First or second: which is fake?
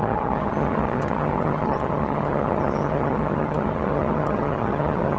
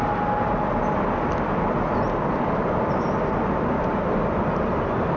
first